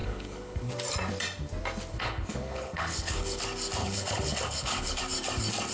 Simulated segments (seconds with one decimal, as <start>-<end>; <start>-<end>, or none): 0.0-0.7; 1.9-3.4; 3.8-5.0